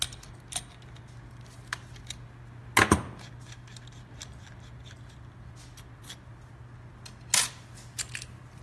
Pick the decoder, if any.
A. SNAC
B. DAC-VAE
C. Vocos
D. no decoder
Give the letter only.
D